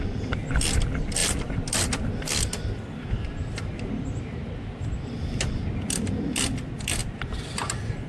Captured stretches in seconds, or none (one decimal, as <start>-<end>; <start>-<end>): 0.0-1.2; 6.1-7.0